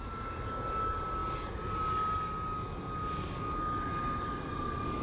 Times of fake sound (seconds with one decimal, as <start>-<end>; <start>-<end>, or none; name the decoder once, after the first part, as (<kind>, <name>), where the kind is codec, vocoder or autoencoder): none